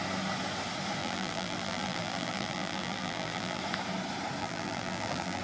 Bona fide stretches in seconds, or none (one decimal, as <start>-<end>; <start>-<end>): 0.0-1.0; 3.6-4.4